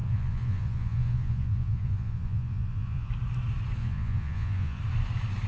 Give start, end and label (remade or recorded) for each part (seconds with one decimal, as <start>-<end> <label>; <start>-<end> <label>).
0.0-3.1 remade; 3.1-3.8 recorded; 3.8-4.8 remade; 4.8-5.5 recorded